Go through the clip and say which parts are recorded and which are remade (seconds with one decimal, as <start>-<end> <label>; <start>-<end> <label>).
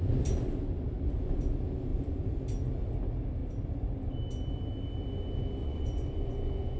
0.0-5.6 recorded; 5.6-6.8 remade